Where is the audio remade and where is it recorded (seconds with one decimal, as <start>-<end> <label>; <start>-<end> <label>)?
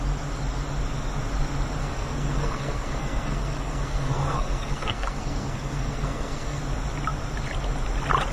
0.0-1.8 recorded; 1.8-6.6 remade; 6.6-8.3 recorded